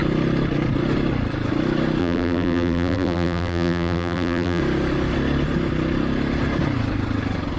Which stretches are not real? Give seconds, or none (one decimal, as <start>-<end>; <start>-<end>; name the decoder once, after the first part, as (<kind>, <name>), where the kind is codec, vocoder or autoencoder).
2.0-4.6 (vocoder, BigVGAN v2)